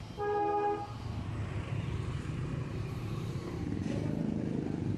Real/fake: fake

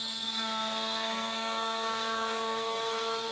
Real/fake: fake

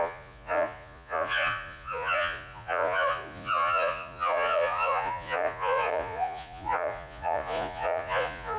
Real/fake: fake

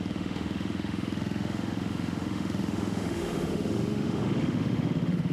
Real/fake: fake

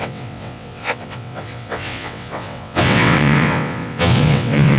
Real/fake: fake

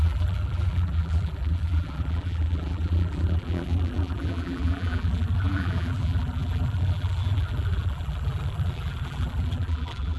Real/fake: fake